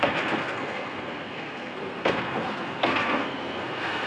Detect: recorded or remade remade